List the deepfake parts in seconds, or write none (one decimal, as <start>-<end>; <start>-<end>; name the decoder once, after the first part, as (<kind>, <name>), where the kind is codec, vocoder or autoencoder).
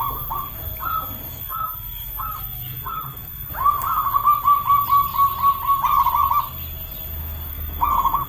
1.3-3.5 (autoencoder, DAC-VAE); 7.5-8.3